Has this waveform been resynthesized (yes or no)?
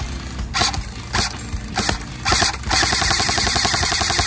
no